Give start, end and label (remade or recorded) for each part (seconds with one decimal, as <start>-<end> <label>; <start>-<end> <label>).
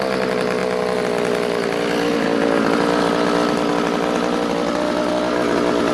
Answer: 0.0-5.9 recorded